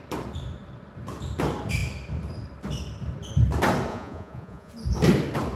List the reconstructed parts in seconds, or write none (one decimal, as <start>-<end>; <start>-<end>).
3.9-4.7